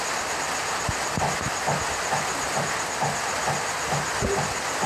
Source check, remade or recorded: recorded